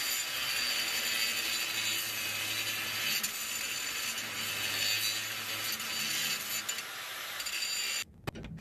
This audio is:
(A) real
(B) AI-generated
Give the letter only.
A